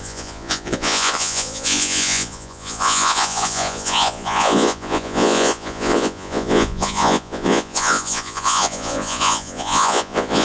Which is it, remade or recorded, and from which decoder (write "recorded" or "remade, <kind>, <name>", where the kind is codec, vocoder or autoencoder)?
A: remade, vocoder, Vocos